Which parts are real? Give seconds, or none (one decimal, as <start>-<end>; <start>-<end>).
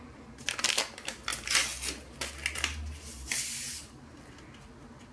0.0-5.1